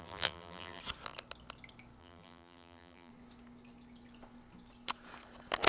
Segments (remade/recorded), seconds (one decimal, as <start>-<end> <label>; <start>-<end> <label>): 0.0-0.8 remade; 0.8-2.0 recorded; 2.0-3.1 remade; 3.1-5.7 recorded